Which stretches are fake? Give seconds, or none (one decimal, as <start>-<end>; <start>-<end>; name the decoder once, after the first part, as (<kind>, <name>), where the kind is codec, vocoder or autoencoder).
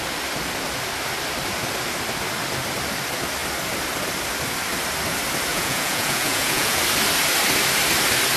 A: 5.5-6.8 (vocoder, Vocos)